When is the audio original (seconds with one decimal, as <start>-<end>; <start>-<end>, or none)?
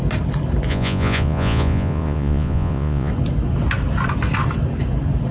0.0-0.7; 3.1-5.3